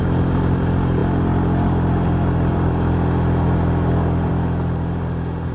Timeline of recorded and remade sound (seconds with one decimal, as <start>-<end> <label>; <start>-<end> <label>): 0.0-5.5 recorded